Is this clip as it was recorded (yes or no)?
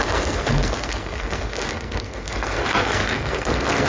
no